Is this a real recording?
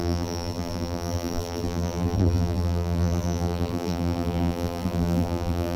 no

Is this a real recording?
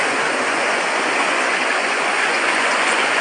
no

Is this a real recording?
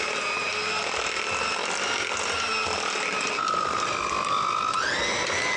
yes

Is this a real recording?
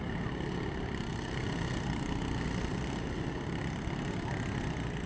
yes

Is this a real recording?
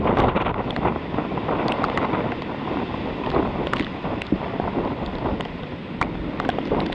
yes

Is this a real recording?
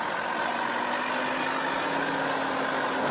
yes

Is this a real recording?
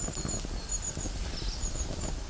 yes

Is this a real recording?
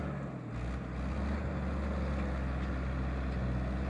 yes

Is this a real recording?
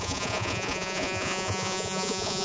no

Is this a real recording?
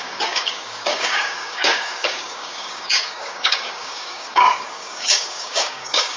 no